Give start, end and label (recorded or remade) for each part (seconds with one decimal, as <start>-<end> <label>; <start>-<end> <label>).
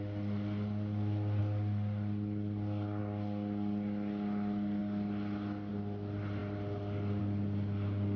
0.0-8.2 recorded